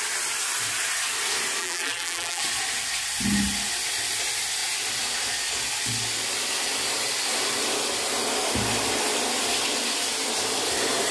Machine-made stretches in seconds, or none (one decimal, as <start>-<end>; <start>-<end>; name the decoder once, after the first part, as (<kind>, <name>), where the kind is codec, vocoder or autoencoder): 1.6-2.4 (vocoder, BigVGAN v2)